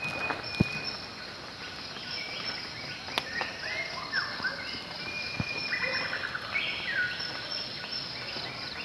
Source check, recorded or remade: recorded